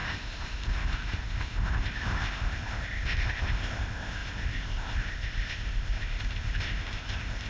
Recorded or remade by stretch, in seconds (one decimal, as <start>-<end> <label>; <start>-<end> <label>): 0.0-7.5 remade